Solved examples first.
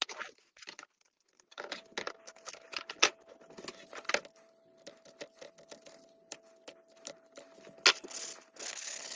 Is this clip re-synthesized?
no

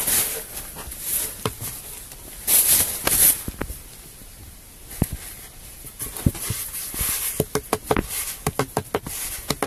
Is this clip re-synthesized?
no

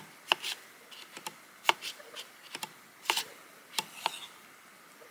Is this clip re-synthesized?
no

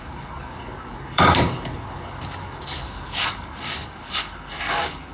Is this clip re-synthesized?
yes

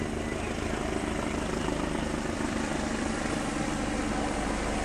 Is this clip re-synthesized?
yes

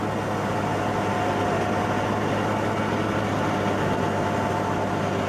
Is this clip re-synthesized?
no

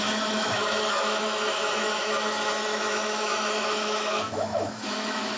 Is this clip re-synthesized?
yes